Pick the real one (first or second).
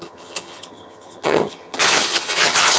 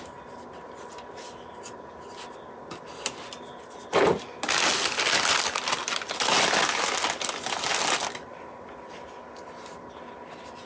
second